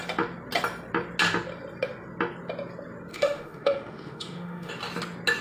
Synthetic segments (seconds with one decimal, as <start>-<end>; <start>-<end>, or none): 3.1-4.7